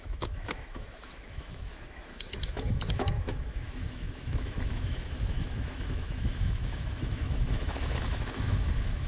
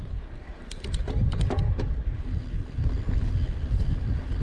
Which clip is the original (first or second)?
second